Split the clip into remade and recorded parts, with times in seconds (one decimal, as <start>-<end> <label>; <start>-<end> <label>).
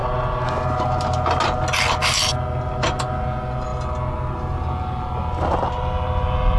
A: 0.0-6.6 recorded